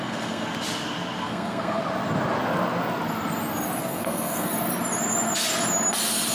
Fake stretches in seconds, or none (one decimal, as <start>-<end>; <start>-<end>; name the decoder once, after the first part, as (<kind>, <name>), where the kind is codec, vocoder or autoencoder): 0.0-0.5 (codec, SNAC); 1.2-1.8; 3.8-4.5